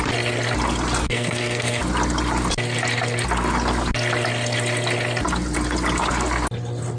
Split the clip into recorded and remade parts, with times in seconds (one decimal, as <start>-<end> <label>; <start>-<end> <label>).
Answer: 0.0-1.0 recorded; 1.0-1.8 remade; 1.8-7.0 recorded